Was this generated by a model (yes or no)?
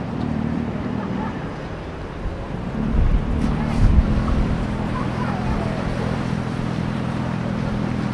yes